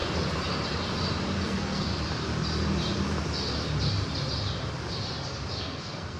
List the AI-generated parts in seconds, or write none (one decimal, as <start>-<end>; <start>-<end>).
1.4-1.9; 5.6-6.2